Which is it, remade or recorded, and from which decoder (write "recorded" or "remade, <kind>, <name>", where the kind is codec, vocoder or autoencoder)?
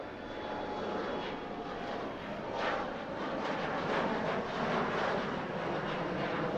recorded